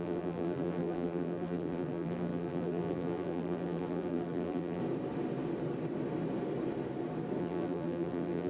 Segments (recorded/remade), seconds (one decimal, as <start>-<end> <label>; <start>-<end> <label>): 0.0-4.8 remade; 4.8-7.4 recorded; 7.4-8.5 remade

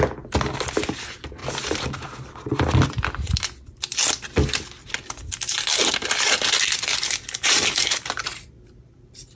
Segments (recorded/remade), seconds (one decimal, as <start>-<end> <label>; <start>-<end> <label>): 0.0-9.4 recorded

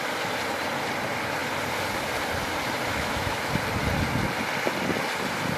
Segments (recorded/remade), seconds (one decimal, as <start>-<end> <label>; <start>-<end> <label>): 0.0-2.9 recorded; 2.9-3.5 remade; 3.5-5.6 recorded

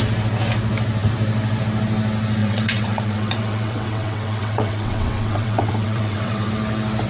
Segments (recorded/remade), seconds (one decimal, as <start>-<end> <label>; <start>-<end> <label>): 0.0-2.4 recorded; 2.4-6.5 remade; 6.5-7.1 recorded